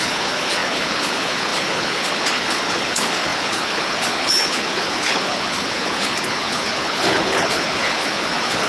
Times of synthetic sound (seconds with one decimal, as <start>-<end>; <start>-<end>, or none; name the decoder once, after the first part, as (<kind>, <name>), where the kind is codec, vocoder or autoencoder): 0.0-8.7 (codec, HILCodec)